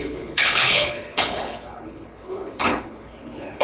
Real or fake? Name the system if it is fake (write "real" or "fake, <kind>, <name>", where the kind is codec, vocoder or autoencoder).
fake, codec, HILCodec